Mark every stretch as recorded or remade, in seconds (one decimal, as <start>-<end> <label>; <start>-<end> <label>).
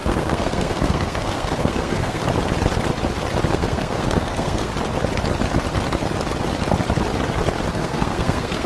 0.0-2.2 remade; 2.2-3.5 recorded; 3.5-4.7 remade; 4.7-7.7 recorded; 7.7-8.7 remade